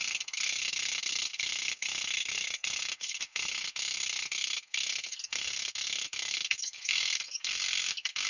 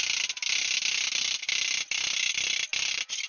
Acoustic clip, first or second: second